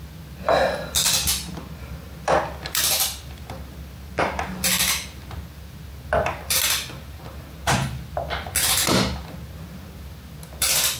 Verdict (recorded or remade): recorded